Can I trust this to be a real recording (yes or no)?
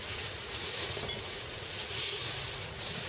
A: no